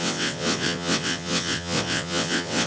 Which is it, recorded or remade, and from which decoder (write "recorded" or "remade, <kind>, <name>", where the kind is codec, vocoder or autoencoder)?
remade, vocoder, WaveNeXt